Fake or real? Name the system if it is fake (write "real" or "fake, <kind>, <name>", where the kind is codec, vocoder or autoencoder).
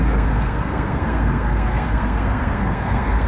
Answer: fake, codec, SNAC